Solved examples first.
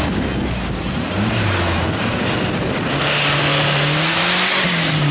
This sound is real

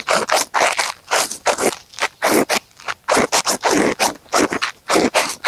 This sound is fake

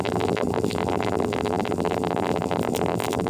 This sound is fake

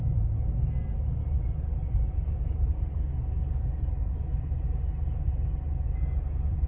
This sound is real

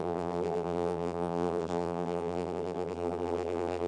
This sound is fake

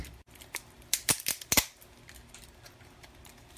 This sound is real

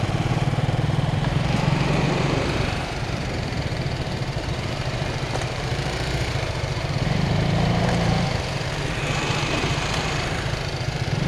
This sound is fake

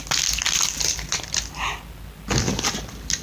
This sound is real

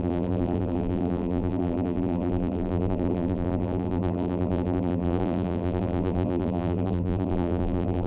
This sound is fake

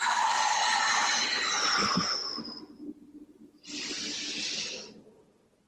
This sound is real